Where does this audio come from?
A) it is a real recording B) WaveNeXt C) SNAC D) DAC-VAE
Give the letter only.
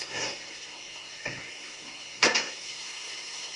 C